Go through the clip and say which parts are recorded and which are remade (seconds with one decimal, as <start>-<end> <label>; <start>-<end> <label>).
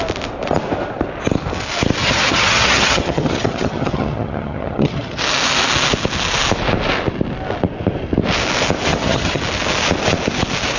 0.0-2.0 recorded; 2.0-5.2 remade; 5.2-8.9 recorded; 8.9-9.4 remade; 9.4-10.8 recorded